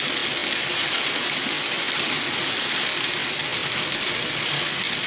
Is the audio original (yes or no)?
yes